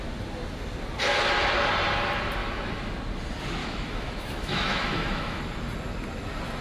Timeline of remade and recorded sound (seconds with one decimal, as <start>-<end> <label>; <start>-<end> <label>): 0.0-2.4 recorded; 2.4-2.9 remade; 2.9-3.6 recorded; 3.6-5.4 remade; 5.4-6.6 recorded